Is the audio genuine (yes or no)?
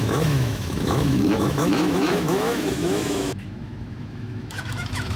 no